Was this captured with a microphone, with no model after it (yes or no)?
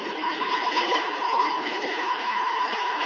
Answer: no